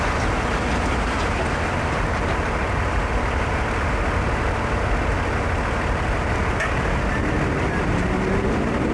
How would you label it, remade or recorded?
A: recorded